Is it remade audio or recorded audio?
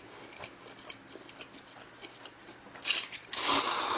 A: recorded